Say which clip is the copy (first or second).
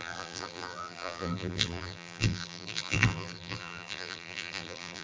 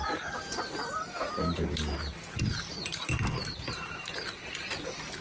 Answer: first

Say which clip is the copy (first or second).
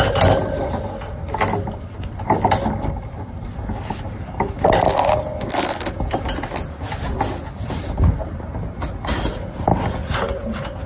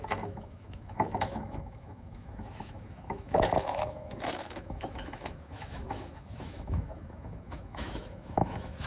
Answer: second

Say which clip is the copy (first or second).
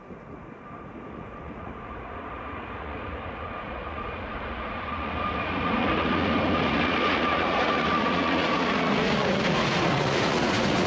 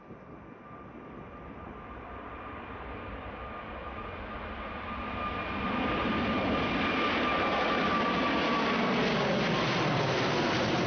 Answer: first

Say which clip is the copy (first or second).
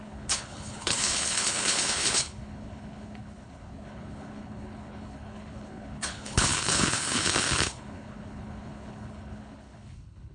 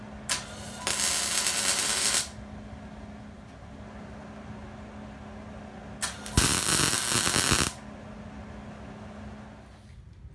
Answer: first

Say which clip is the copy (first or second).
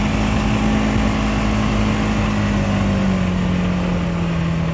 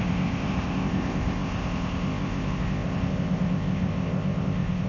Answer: second